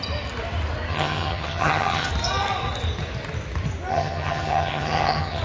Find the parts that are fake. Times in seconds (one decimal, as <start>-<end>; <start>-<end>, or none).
0.9-2.1; 3.9-5.4

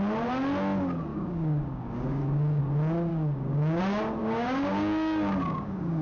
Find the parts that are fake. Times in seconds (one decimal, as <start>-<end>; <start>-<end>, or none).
1.1-2.6; 3.1-3.8; 4.2-6.0

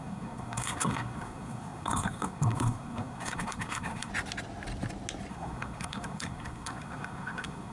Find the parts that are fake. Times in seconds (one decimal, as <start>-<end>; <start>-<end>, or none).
0.0-4.1; 5.3-7.7

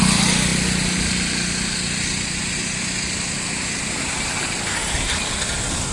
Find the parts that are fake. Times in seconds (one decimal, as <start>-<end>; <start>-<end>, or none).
none

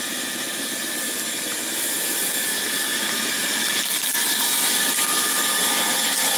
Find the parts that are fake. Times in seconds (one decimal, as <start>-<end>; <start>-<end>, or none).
none

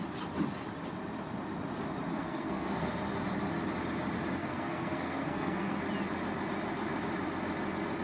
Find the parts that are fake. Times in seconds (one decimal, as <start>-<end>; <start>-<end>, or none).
2.1-3.0; 4.4-5.8